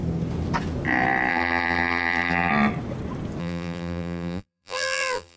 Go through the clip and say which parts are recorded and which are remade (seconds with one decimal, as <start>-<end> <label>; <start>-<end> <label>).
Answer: 0.0-1.3 recorded; 1.3-2.5 remade; 2.5-3.4 recorded; 3.4-5.4 remade